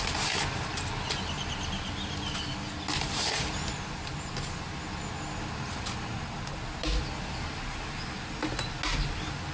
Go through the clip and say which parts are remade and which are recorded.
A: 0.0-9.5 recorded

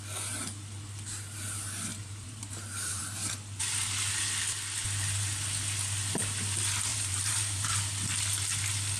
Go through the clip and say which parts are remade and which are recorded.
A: 0.0-1.9 recorded; 1.9-3.0 remade; 3.0-6.9 recorded; 6.9-7.8 remade; 7.8-9.0 recorded

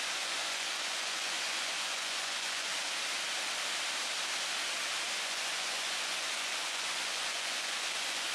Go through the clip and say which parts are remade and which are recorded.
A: 0.0-2.7 remade; 2.7-5.2 recorded; 5.2-8.3 remade

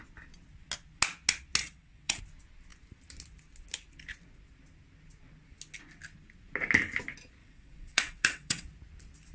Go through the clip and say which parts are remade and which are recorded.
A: 0.0-1.6 recorded; 1.6-2.2 remade; 2.2-7.4 recorded; 7.4-8.7 remade; 8.7-9.3 recorded

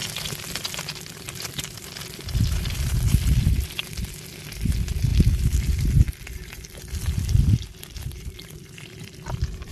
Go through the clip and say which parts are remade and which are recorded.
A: 0.0-0.8 recorded; 0.8-9.7 remade

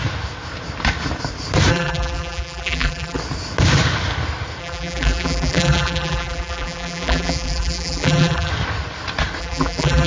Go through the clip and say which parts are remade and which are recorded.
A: 0.0-1.7 recorded; 1.7-3.2 remade; 3.2-4.6 recorded; 4.6-8.5 remade; 8.5-9.4 recorded; 9.4-10.1 remade